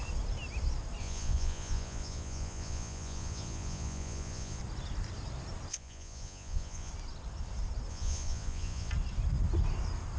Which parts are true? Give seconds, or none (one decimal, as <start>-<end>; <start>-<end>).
0.0-1.0; 4.6-5.7; 6.9-7.9; 8.9-10.2